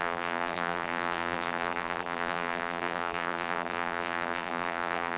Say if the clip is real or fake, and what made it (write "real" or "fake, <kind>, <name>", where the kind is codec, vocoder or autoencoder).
fake, vocoder, BigVGAN v2